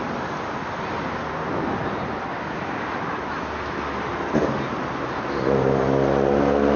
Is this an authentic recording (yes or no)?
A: yes